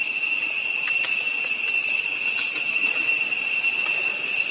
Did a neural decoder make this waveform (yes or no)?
no